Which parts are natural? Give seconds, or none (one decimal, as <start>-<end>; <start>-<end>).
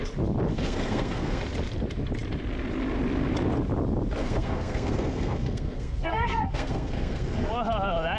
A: 0.0-0.5; 1.4-4.2; 7.5-8.2